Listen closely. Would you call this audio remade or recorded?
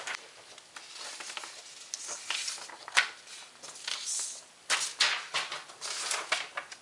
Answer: recorded